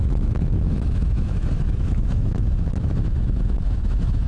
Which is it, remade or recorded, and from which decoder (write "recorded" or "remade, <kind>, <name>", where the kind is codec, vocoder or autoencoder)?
remade, autoencoder, DAC-VAE